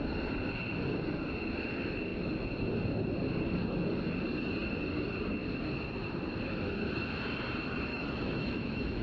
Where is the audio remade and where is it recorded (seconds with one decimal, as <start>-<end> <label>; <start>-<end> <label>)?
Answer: 0.0-7.9 recorded; 7.9-9.0 remade